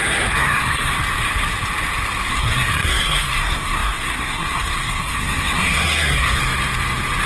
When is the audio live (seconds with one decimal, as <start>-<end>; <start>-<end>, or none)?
0.9-2.3; 6.4-7.3